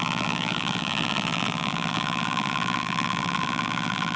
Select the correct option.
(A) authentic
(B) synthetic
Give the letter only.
B